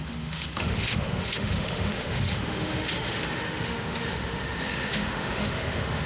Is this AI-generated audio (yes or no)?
yes